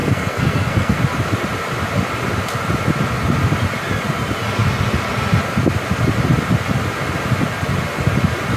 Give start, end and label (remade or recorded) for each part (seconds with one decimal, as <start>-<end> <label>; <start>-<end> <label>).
0.0-1.0 remade; 1.0-8.6 recorded